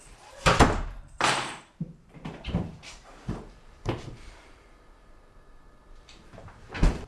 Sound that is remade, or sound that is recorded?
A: remade